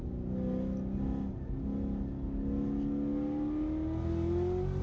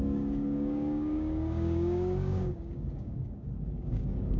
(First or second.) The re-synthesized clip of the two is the second